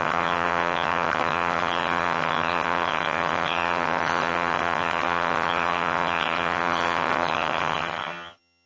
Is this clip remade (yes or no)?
yes